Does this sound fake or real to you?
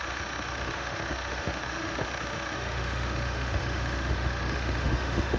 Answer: fake